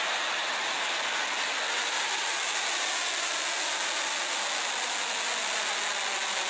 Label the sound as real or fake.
real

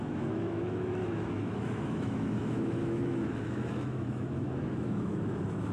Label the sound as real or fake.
fake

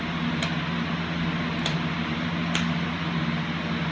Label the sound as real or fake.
real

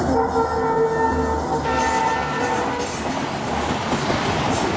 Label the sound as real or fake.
real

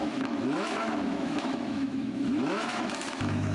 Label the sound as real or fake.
fake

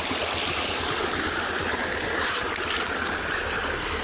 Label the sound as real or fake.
real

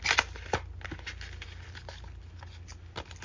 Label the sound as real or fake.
real